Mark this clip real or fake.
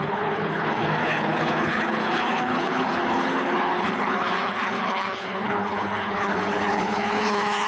fake